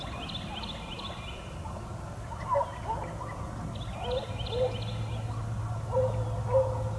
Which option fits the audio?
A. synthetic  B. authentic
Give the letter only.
B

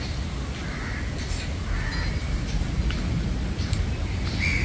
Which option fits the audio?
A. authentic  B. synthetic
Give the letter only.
A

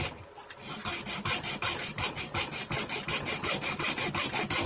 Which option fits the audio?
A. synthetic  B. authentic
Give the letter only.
B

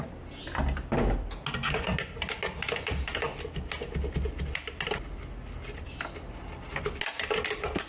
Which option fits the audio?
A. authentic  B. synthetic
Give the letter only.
A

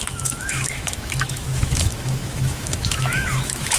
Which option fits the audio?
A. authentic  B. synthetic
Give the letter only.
B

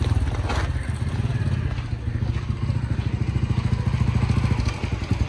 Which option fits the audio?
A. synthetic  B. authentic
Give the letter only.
B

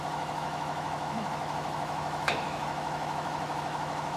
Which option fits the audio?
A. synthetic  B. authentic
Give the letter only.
A